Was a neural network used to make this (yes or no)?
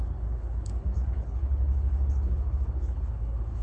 yes